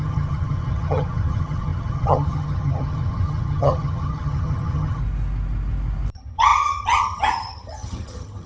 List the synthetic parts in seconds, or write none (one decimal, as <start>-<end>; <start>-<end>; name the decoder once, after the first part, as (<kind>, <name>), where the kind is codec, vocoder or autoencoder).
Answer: 0.0-5.0 (vocoder, HiFi-GAN); 6.1-8.5